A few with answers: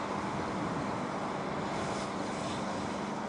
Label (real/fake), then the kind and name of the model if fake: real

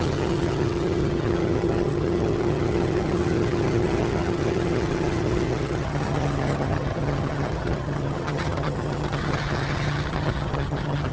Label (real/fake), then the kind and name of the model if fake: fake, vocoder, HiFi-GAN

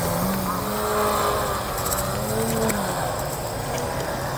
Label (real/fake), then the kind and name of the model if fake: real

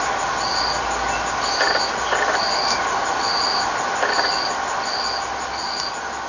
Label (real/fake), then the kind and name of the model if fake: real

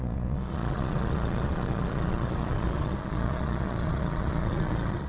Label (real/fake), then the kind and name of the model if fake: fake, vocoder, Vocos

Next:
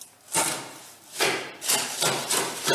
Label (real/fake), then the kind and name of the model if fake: real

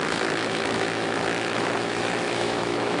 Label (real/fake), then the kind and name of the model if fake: fake, autoencoder, DAC-VAE